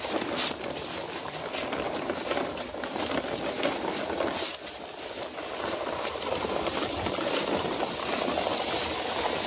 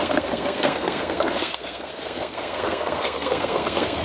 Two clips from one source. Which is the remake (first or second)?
second